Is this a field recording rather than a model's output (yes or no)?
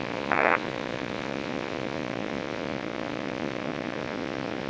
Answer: no